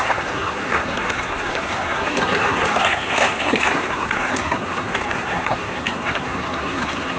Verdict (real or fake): fake